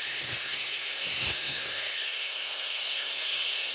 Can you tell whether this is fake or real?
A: fake